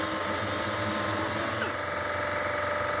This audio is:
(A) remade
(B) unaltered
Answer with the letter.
B